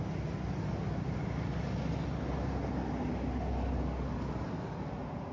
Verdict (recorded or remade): recorded